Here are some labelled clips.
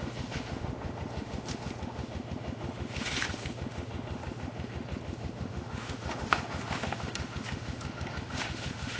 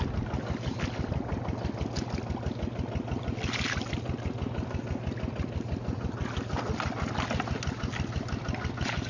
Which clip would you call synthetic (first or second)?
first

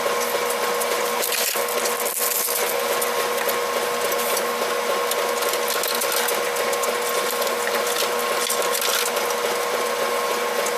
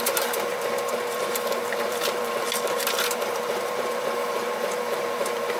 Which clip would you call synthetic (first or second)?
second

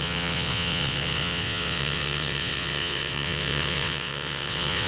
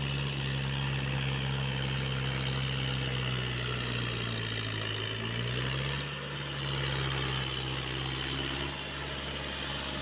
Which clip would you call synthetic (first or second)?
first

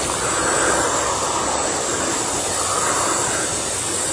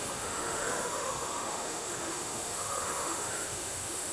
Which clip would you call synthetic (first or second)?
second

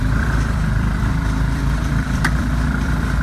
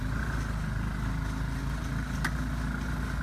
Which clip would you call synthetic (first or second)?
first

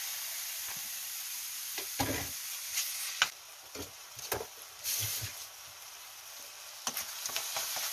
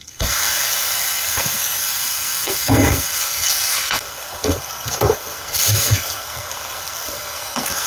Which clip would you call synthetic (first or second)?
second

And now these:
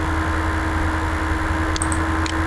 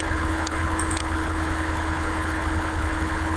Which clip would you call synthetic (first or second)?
second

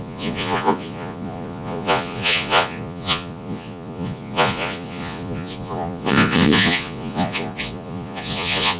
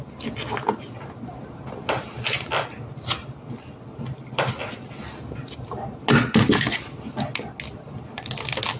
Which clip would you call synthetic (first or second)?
first